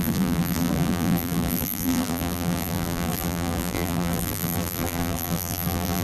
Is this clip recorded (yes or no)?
no